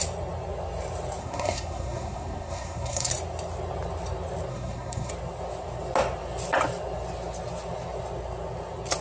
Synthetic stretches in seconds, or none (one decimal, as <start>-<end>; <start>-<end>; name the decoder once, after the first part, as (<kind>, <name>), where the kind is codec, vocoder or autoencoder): 1.2-3.1 (codec, SNAC); 4.5-5.1